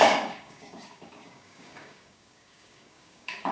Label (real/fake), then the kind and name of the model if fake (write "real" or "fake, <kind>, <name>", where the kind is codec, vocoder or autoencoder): fake, codec, DAC